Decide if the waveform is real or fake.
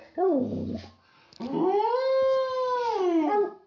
real